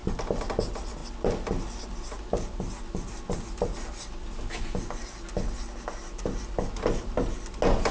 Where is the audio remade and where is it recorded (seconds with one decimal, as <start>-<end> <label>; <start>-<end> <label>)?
0.0-7.9 recorded